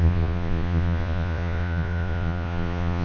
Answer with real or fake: fake